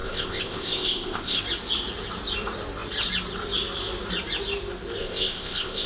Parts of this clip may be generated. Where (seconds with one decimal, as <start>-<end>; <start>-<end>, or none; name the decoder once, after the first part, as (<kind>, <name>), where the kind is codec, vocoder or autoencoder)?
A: 0.0-1.4 (codec, ZipCodec); 5.0-5.9